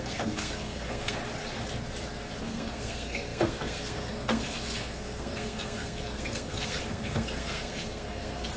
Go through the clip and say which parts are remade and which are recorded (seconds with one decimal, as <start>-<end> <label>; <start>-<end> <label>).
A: 0.0-1.2 remade; 1.2-2.4 recorded; 2.4-8.6 remade